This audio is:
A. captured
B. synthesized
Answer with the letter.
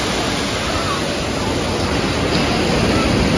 A